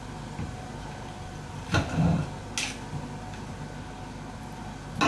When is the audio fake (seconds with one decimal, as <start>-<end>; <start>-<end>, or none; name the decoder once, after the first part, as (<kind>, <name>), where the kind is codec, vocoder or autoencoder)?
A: none